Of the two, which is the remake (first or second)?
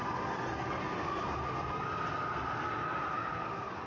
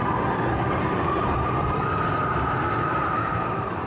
second